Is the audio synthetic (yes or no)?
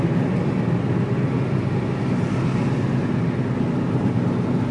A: no